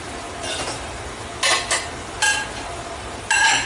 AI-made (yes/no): no